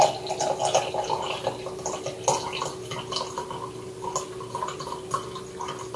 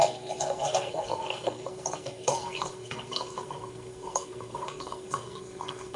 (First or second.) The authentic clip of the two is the first